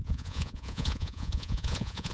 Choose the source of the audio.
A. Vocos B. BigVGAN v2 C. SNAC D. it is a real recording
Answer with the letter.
A